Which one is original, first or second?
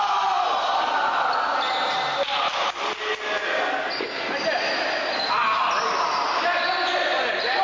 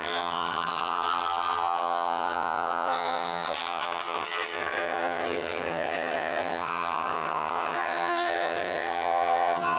first